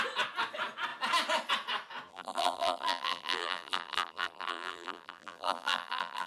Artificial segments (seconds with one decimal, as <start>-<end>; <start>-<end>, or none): 2.1-6.3